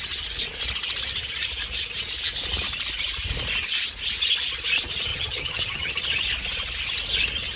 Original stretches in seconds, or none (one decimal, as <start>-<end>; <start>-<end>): 0.0-5.1; 5.9-7.6